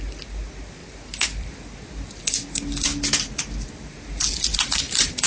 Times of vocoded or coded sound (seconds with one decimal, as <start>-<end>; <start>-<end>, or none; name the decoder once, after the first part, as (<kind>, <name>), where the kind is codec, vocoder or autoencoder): 0.8-1.5 (vocoder, BigVGAN v2); 4.5-5.3